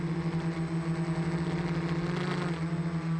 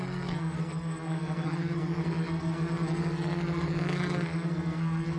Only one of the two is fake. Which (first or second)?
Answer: second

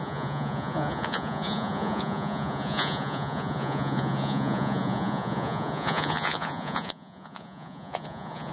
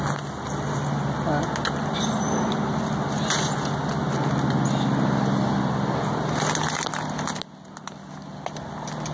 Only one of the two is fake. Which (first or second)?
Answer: first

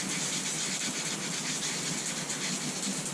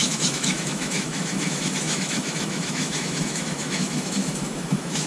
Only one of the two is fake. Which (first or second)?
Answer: second